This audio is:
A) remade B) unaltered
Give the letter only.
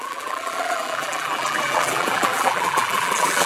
A